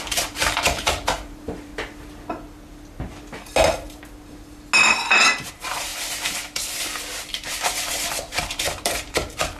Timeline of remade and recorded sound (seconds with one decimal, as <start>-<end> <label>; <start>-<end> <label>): 0.0-1.7 remade; 1.7-5.5 recorded; 5.5-5.9 remade; 5.9-8.3 recorded; 8.3-9.6 remade